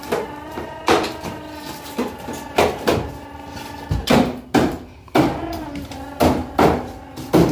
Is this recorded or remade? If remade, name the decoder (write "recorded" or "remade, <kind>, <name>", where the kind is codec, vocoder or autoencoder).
recorded